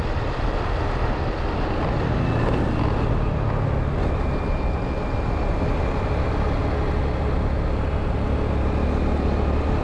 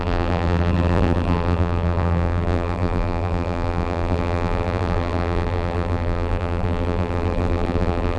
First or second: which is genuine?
first